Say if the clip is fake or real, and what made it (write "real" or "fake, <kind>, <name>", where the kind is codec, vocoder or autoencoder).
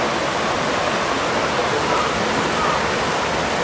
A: real